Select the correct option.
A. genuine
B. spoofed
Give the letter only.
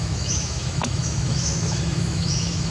B